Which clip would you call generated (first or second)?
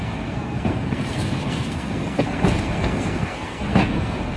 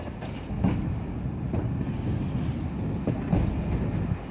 first